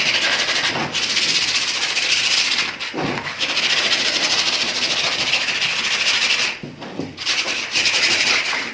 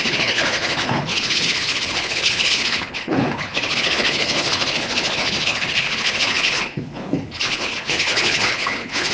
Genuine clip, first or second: first